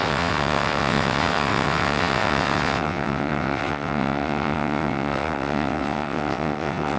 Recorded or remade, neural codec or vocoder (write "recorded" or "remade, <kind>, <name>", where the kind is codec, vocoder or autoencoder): remade, vocoder, WaveNeXt